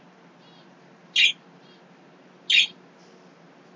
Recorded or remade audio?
recorded